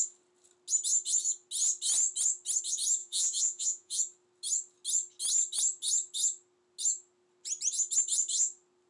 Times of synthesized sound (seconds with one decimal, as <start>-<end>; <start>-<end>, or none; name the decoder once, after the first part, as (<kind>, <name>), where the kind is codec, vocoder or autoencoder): 3.0-4.0 (vocoder, Vocos)